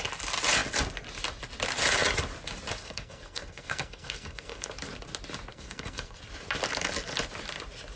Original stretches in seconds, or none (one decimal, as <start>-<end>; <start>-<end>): 0.0-2.8; 4.7-5.5; 6.2-8.0